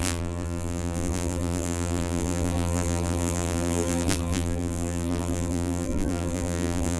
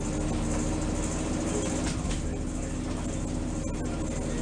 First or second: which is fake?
first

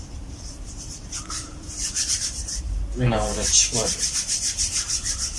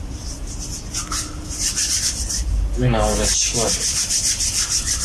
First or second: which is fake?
first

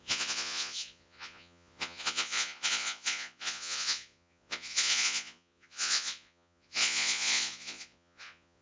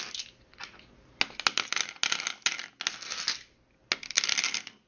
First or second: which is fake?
first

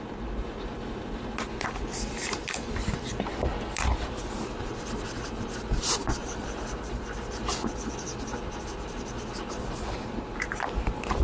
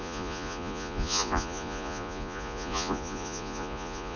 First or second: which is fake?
second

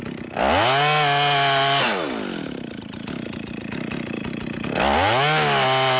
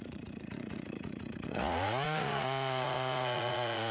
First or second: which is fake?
second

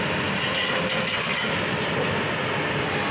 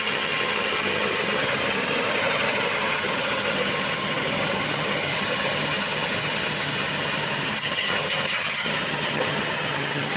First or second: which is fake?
second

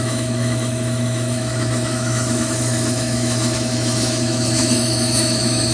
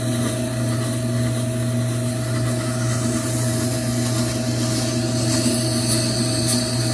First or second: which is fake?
first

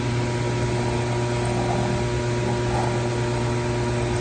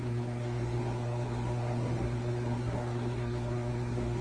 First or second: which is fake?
second